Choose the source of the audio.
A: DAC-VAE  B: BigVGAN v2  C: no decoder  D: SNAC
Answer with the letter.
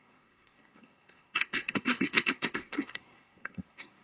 D